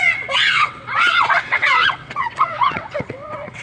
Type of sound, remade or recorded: remade